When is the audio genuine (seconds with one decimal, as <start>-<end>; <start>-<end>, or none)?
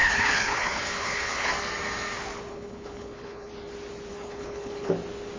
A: 1.5-2.5; 3.5-4.1; 4.9-5.4